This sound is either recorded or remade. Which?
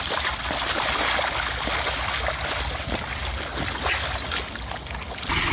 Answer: recorded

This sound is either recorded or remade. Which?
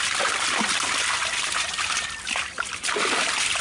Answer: recorded